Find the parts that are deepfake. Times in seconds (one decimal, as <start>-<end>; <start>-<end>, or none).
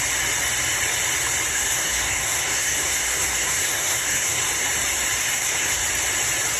1.5-4.4; 5.2-5.8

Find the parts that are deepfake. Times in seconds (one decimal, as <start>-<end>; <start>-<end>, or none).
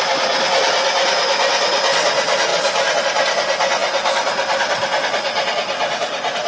none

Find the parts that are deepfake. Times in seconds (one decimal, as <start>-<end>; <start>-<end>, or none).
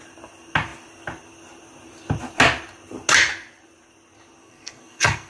4.4-5.3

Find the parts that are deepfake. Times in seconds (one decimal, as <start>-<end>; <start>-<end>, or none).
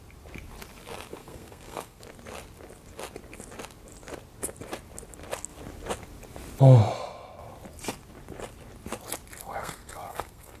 1.2-2.0; 9.4-10.6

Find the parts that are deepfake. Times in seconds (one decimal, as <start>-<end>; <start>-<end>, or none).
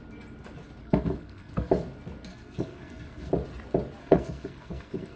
0.8-1.7; 2.3-3.3; 4.0-5.2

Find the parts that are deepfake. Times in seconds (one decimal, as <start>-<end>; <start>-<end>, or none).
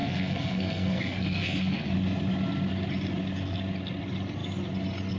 0.0-1.9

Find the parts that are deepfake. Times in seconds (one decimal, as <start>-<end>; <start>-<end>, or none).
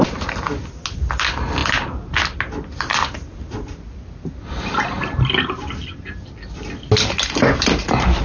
none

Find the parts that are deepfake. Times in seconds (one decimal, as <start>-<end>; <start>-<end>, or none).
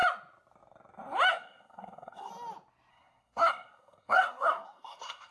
1.3-2.3; 2.9-5.3